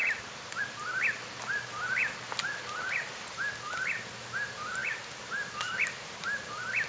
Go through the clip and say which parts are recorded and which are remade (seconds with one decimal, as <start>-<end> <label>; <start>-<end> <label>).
0.0-6.9 recorded